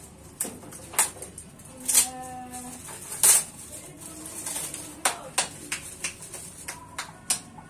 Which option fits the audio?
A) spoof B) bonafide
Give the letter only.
B